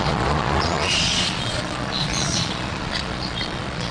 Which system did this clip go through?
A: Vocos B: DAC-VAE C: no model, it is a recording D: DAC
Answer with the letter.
A